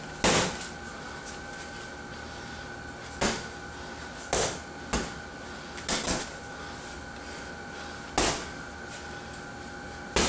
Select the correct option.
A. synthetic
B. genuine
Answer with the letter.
B